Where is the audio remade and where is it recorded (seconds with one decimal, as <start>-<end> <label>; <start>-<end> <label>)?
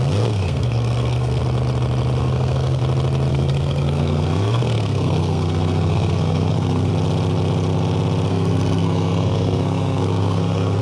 0.0-1.4 remade; 1.4-2.2 recorded; 2.2-2.8 remade; 2.8-3.3 recorded; 3.3-6.9 remade; 6.9-8.3 recorded; 8.3-10.8 remade